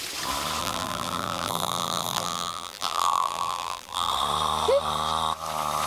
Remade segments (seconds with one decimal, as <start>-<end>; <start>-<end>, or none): 0.6-4.1